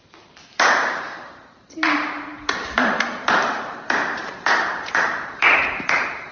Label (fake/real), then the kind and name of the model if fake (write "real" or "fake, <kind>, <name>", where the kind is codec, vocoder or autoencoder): fake, vocoder, BigVGAN v2